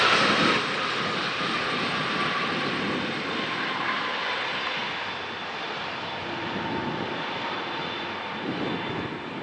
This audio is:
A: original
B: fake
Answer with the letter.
A